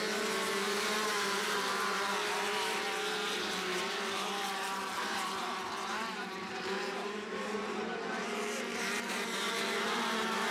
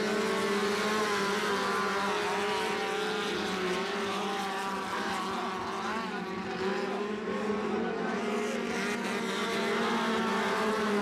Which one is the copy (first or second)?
first